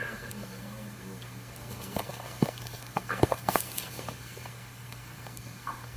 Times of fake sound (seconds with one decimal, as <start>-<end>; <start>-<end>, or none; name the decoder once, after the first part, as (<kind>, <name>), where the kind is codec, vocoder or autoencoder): 0.0-6.0 (codec, SNAC)